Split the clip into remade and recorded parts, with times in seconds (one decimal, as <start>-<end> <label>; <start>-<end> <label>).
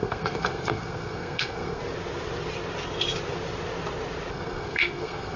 0.0-1.8 remade; 1.8-4.3 recorded; 4.3-5.4 remade